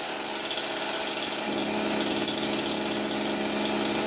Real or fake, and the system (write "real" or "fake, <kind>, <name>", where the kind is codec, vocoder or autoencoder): real